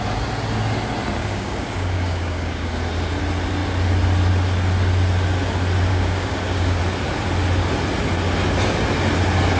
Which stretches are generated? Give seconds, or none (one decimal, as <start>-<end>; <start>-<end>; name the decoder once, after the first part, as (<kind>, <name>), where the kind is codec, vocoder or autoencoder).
1.2-2.7 (codec, DAC); 5.9-6.8